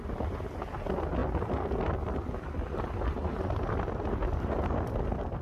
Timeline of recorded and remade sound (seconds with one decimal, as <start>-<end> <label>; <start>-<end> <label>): 0.0-5.4 recorded

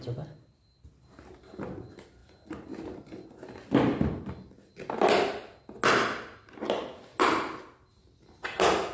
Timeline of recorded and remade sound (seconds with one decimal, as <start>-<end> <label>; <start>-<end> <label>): 0.0-8.9 recorded

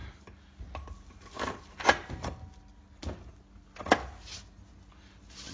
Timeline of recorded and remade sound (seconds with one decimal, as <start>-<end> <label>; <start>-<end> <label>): 0.0-5.5 recorded

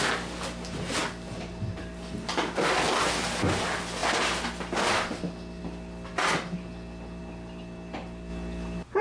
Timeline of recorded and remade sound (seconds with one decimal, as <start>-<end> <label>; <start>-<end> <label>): 0.0-9.0 recorded

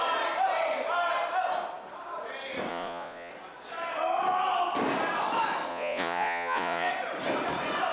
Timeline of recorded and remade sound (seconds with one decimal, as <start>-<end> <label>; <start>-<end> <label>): 0.0-2.7 recorded; 2.7-3.3 remade; 3.3-5.7 recorded; 5.7-6.9 remade; 6.9-7.9 recorded